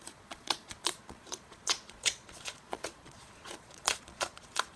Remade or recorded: remade